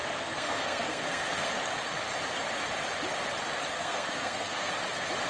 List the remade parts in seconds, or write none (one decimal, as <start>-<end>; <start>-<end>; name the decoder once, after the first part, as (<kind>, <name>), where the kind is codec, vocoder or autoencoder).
0.0-1.5 (codec, SNAC); 3.7-4.7